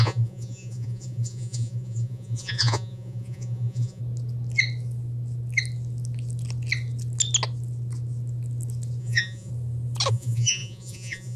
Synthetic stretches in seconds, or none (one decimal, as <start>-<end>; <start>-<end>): 0.0-4.0; 9.0-9.5; 10.1-11.4